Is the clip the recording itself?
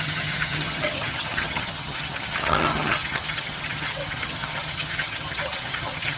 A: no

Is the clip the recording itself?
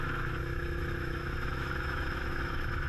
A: no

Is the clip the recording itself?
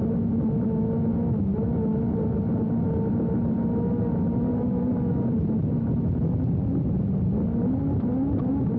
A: yes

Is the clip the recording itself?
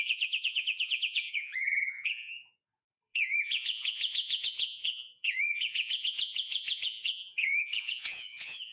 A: no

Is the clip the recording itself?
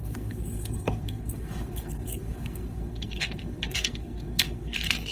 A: no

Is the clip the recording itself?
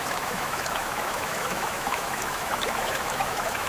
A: no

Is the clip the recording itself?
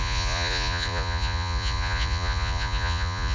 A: no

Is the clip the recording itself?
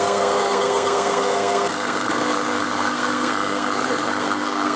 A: no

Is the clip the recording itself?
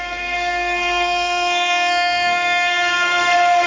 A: no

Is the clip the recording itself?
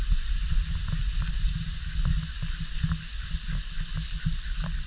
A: yes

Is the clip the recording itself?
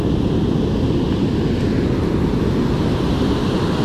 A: yes